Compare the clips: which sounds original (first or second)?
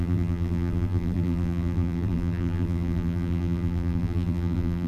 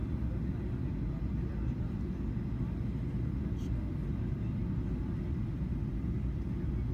second